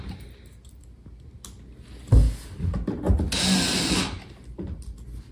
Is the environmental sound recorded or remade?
recorded